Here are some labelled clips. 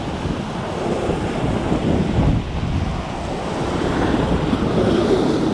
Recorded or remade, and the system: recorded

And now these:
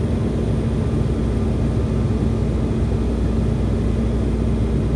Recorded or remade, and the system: recorded